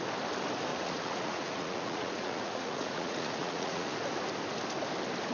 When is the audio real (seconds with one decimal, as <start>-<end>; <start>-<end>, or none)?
0.0-0.7; 3.9-5.3